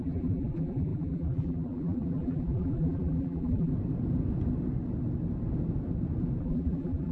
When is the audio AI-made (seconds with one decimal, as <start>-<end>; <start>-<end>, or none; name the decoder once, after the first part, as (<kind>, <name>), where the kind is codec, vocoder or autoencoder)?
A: 0.0-3.7 (vocoder, BigVGAN v2); 6.4-7.1